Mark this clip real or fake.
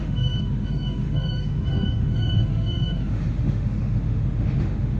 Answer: fake